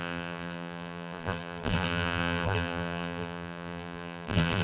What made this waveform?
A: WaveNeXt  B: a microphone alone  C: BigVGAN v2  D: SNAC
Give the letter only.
C